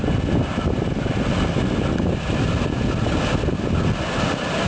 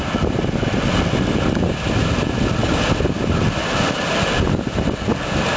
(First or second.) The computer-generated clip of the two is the first